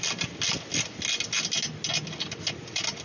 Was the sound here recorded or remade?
recorded